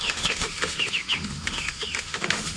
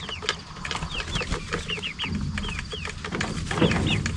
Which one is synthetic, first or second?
first